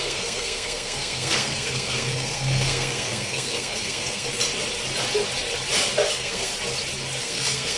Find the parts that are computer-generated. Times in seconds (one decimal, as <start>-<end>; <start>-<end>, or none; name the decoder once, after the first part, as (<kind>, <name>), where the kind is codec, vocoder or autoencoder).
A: 0.0-4.4 (codec, SNAC); 6.1-6.5; 7.2-7.8